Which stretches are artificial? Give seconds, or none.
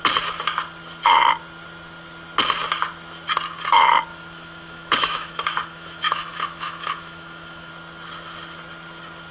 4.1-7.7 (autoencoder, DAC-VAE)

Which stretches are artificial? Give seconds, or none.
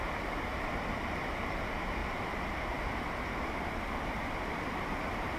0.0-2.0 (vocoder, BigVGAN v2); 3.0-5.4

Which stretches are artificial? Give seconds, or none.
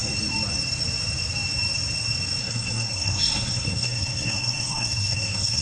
2.4-5.6 (codec, SNAC)